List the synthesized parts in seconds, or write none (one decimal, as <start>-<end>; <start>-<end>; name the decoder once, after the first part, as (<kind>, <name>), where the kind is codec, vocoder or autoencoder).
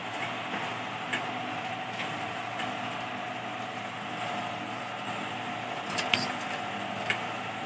none